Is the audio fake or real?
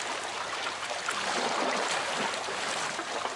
real